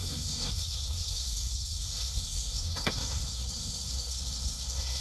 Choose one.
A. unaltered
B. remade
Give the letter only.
B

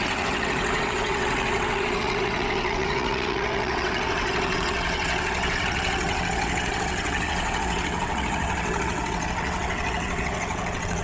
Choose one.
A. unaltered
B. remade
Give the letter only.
B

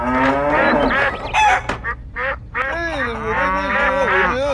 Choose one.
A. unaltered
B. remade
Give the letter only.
A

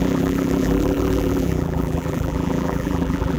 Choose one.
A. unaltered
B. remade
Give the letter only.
B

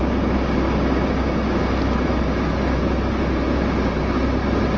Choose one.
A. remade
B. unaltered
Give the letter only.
B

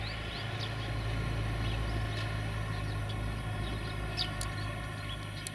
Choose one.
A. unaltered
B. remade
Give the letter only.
A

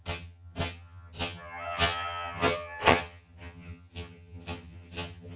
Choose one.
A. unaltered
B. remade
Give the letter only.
B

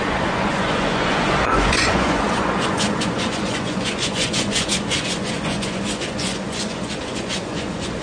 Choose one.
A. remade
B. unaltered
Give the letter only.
A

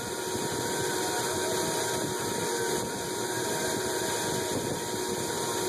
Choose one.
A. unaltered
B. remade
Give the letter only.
A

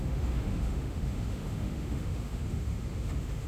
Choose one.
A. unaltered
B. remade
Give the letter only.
B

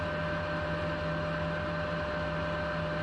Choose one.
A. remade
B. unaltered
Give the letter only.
B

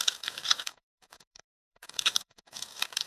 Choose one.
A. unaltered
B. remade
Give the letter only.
B